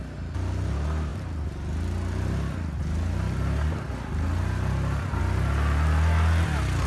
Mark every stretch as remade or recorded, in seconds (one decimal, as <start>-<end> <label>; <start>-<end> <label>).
0.0-6.9 recorded

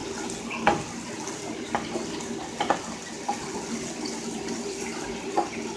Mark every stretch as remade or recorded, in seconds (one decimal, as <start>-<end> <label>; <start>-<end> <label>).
0.0-5.8 recorded

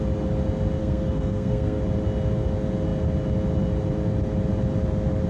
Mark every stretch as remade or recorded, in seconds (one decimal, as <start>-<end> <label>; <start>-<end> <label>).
0.0-0.8 recorded; 0.8-1.8 remade; 1.8-5.3 recorded

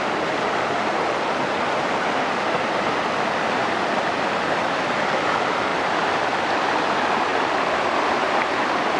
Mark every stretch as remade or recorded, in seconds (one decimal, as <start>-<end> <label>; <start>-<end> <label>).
0.0-9.0 recorded

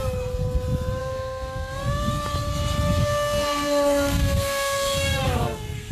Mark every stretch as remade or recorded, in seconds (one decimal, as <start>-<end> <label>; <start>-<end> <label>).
0.0-1.0 recorded; 1.0-2.1 remade; 2.1-3.0 recorded; 3.0-5.9 remade

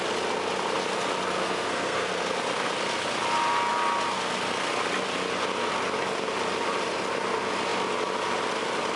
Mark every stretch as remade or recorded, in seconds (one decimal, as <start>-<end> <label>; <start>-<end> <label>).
0.0-1.4 recorded; 1.4-2.1 remade; 2.1-9.0 recorded